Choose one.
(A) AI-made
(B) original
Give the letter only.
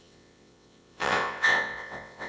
A